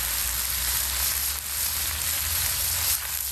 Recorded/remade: recorded